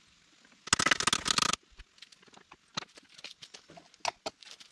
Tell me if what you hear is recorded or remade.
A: recorded